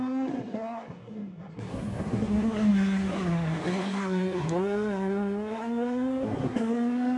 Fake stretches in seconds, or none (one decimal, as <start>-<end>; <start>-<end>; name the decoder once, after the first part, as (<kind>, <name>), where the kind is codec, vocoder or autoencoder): 0.0-7.2 (codec, SNAC)